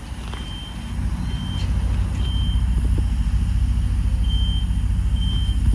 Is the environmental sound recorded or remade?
recorded